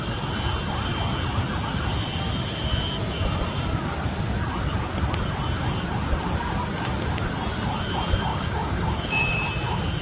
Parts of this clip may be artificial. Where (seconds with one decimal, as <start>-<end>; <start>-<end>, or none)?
8.3-9.5

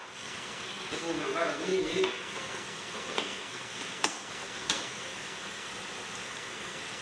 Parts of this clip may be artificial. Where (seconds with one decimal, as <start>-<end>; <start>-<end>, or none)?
0.0-5.7; 6.2-7.0

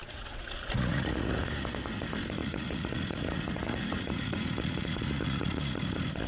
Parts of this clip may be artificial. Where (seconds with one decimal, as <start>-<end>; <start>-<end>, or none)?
0.0-1.4; 2.4-5.6

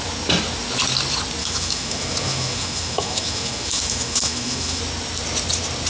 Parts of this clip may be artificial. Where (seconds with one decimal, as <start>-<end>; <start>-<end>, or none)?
1.4-4.8

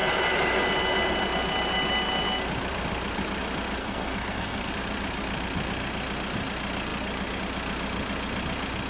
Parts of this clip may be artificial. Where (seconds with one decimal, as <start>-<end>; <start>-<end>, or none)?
3.8-4.7